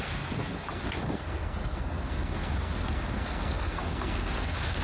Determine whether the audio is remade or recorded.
remade